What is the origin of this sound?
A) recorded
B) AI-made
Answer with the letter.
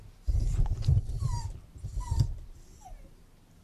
A